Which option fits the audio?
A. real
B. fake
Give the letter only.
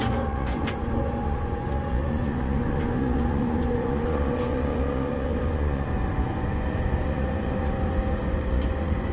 B